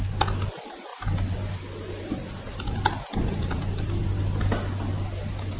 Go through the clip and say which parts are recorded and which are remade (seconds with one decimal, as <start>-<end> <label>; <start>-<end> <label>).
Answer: 0.0-5.6 recorded